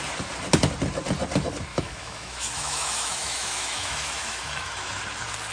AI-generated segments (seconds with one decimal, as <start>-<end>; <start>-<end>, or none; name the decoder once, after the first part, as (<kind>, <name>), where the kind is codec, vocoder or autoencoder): 1.7-5.0 (autoencoder, DAC-VAE)